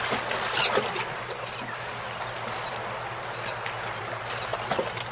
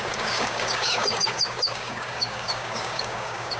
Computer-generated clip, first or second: second